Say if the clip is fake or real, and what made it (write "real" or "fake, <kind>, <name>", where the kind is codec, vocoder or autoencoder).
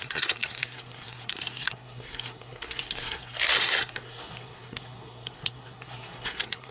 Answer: fake, codec, SNAC